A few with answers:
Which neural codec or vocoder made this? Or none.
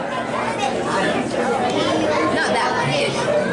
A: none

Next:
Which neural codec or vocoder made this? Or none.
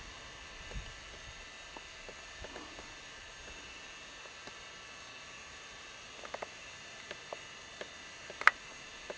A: none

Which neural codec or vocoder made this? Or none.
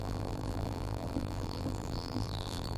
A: vocoder, BigVGAN v2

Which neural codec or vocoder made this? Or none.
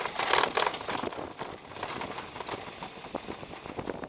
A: none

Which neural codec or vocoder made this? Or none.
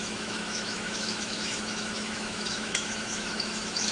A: autoencoder, DAC-VAE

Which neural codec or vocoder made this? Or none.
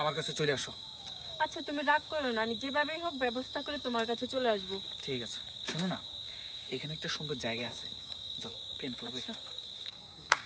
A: codec, DAC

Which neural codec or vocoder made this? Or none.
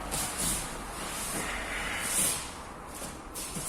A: none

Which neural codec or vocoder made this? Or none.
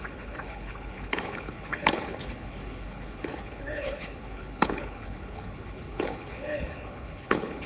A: codec, HILCodec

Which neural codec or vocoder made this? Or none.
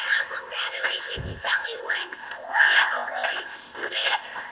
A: codec, ZipCodec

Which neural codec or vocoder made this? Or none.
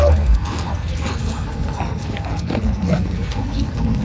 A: codec, SNAC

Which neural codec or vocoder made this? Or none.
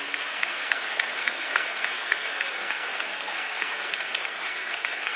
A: codec, SNAC